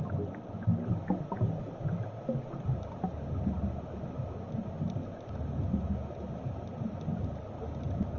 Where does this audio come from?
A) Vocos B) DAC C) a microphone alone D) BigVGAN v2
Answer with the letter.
C